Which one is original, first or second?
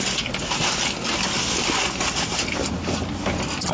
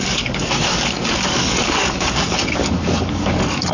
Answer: first